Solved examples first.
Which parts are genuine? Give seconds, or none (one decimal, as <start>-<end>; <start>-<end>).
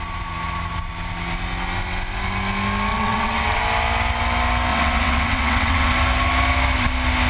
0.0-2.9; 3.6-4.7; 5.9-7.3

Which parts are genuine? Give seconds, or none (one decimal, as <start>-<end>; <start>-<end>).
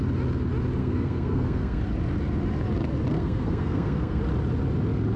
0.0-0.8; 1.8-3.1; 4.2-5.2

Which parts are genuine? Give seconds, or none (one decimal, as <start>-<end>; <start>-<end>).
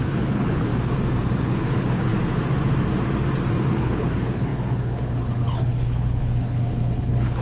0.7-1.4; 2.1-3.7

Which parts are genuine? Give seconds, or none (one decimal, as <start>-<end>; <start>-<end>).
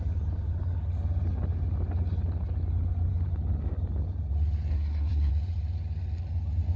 0.0-4.7; 5.3-6.8